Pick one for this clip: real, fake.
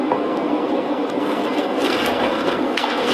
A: fake